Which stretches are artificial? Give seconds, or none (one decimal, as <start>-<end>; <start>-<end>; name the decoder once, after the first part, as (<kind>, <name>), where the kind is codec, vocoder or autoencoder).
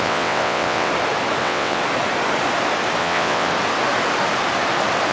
0.0-0.9 (vocoder, WaveNeXt); 1.4-1.8; 3.0-3.5